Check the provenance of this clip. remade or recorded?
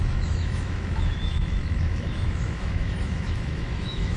remade